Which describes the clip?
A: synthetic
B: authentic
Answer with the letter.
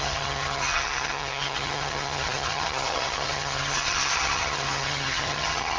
A